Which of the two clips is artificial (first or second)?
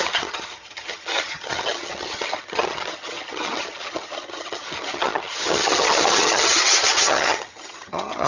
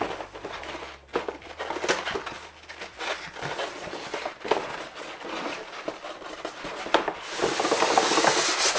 first